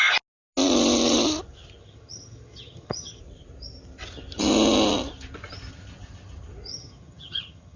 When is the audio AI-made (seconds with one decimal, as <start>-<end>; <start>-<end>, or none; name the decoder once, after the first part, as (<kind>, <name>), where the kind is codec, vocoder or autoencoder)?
1.8-3.2 (vocoder, HiFi-GAN); 6.7-7.8